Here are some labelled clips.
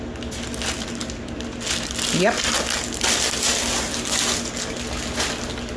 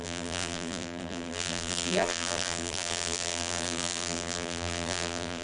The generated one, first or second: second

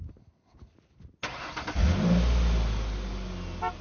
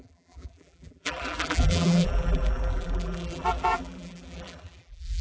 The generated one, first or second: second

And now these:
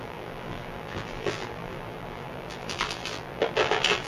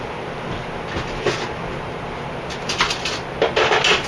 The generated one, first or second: first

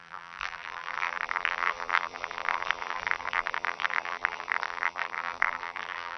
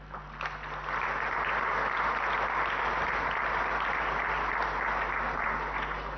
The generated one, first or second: first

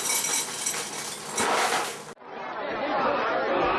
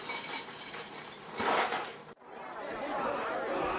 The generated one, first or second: second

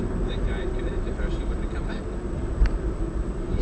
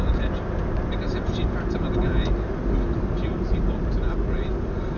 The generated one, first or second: first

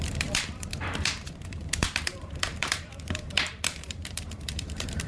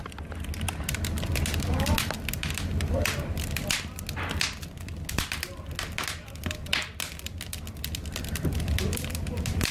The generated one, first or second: first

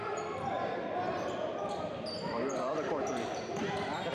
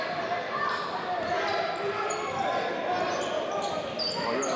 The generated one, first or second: first